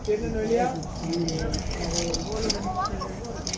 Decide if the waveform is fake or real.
real